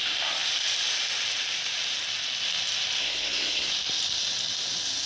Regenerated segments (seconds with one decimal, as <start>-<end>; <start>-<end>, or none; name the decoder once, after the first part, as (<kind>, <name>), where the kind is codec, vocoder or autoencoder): 3.0-3.7 (codec, SNAC)